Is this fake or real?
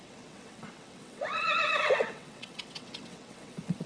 fake